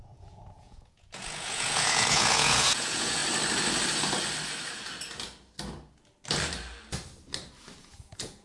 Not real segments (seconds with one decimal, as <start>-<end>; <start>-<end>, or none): 0.0-3.2; 7.8-8.4